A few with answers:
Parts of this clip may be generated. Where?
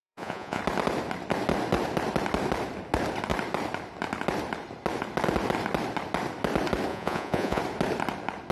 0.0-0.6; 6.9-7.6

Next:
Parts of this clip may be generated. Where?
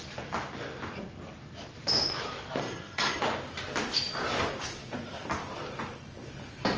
2.6-3.2